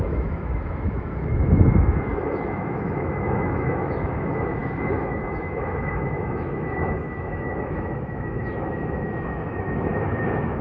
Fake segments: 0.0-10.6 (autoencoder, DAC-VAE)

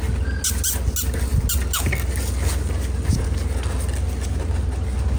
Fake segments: none

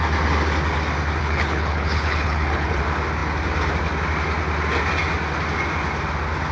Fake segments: 1.2-2.8 (codec, HILCodec)

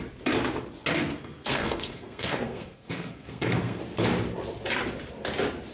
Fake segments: 0.9-3.8 (codec, SNAC)

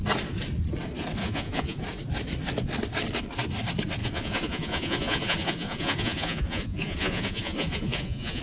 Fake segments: 1.2-1.8 (vocoder, Vocos); 4.0-8.4

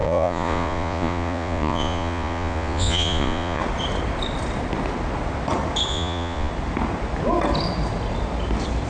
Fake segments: 0.0-3.6 (vocoder, Vocos); 5.9-6.5

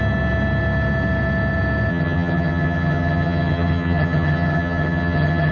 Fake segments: 1.9-5.5 (vocoder, HiFi-GAN)

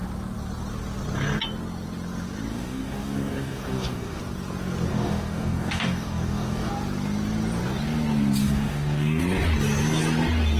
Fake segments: 2.5-4.2 (codec, DAC); 4.9-6.7; 8.4-9.2